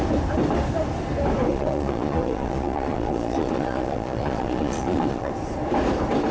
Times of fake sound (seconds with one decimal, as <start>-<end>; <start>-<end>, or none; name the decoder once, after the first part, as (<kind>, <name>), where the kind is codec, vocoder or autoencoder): 1.5-5.3 (vocoder, Vocos)